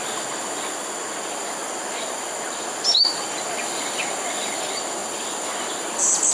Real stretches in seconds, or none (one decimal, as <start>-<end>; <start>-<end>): 0.0-6.3